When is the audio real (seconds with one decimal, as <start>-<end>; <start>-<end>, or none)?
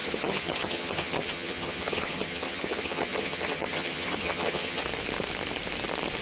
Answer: 4.8-6.2